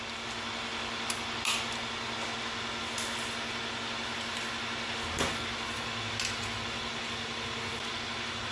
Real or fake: real